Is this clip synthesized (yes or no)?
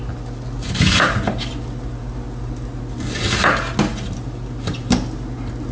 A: no